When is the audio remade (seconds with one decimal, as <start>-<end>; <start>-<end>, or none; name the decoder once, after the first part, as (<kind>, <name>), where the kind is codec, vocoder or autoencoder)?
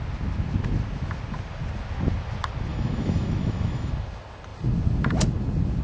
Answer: 2.7-3.9 (autoencoder, DAC-VAE)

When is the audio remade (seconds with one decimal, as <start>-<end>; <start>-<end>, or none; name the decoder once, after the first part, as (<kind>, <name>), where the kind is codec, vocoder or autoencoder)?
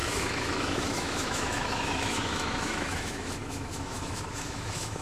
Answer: 0.0-5.0 (autoencoder, DAC-VAE)